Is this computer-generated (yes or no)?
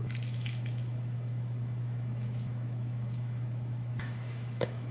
yes